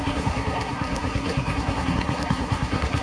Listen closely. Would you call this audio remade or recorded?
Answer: remade